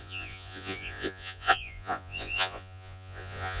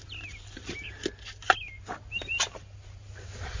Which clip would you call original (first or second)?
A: second